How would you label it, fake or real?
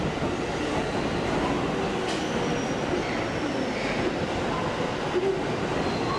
real